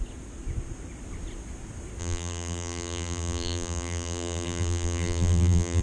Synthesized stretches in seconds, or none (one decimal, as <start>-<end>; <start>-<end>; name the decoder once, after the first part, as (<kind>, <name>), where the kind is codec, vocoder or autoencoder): 2.0-5.8 (vocoder, BigVGAN v2)